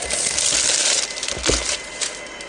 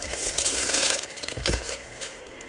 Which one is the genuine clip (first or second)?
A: first